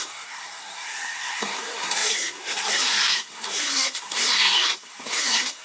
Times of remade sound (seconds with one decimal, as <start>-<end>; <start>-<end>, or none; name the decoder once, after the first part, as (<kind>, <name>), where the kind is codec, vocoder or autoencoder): 0.0-5.6 (codec, SNAC)